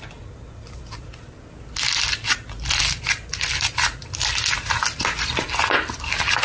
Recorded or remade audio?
recorded